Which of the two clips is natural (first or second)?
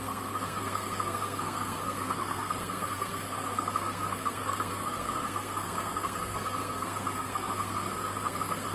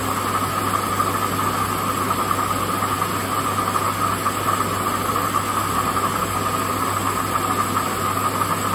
second